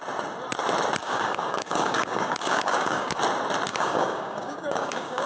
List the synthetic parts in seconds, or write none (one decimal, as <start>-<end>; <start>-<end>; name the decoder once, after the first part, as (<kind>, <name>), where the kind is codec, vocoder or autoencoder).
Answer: 1.0-3.2 (codec, DAC); 3.7-5.3